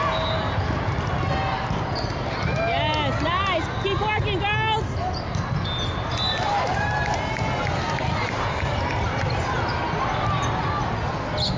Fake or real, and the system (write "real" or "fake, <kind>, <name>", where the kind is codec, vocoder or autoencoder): real